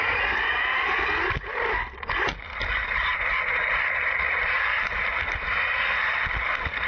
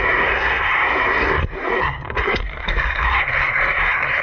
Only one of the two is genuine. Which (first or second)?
first